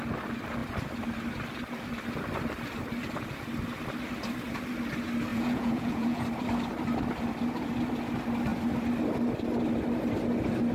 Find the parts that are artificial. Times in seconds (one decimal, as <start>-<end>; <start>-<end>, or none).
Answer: 5.3-6.2